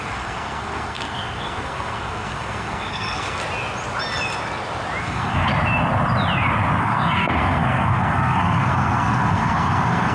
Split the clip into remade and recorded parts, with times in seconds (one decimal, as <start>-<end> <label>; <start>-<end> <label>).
0.0-3.4 remade; 3.4-5.0 recorded; 5.0-5.5 remade; 5.5-6.8 recorded; 6.8-10.1 remade